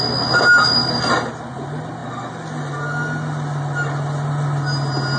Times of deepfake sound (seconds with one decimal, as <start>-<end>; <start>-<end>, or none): none